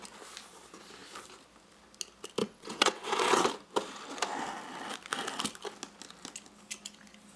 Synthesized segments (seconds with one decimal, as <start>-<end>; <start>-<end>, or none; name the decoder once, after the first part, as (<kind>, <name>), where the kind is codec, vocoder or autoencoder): 2.4-3.5 (vocoder, WaveNeXt)